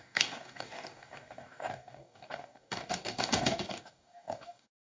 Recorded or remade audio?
remade